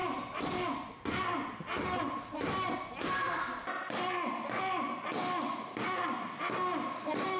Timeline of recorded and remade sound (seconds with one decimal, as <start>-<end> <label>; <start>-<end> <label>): 0.0-7.4 recorded